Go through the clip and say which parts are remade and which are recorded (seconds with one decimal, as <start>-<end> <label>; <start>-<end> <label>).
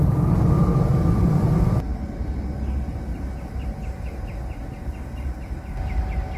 0.0-6.4 recorded